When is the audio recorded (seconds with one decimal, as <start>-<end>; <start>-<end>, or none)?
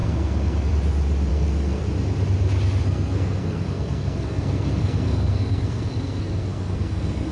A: 0.7-1.3; 1.8-2.8